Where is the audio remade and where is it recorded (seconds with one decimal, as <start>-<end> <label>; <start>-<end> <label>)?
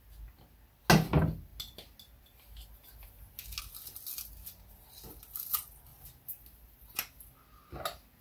0.0-8.2 recorded